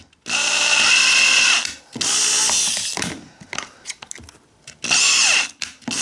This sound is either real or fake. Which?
real